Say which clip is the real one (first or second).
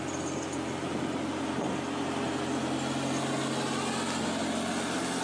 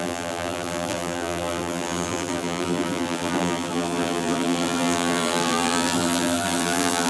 first